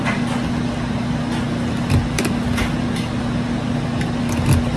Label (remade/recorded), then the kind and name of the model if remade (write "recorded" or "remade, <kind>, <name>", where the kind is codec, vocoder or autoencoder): recorded